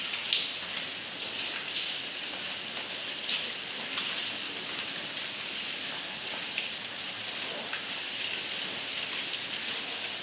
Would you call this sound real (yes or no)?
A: yes